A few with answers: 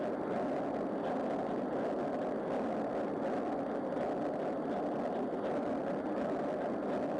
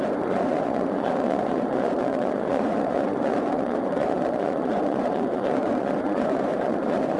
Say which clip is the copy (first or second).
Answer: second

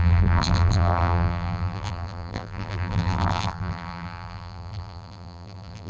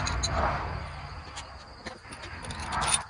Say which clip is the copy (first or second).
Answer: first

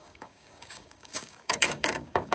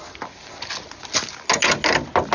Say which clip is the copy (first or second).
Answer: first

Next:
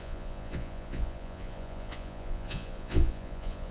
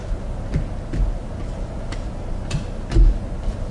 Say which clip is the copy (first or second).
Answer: first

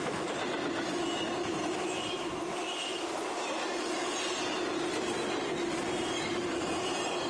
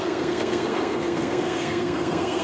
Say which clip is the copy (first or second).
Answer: second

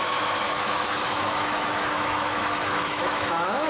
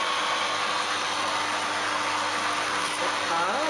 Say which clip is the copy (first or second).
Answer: first